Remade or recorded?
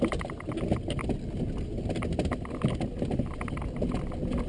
recorded